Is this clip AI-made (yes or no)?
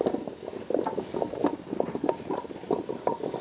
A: no